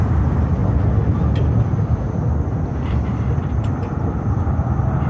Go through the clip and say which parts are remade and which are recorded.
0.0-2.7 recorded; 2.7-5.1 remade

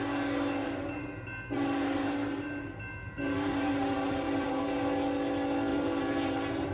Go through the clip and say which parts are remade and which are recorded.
0.0-0.6 recorded; 0.6-4.6 remade; 4.6-5.7 recorded; 5.7-6.7 remade

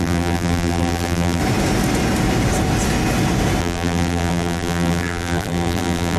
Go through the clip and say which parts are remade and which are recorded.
0.0-1.4 remade; 1.4-3.6 recorded; 3.6-6.2 remade

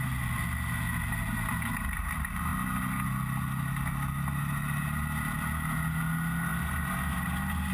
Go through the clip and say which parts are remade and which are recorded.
0.0-6.5 recorded; 6.5-7.7 remade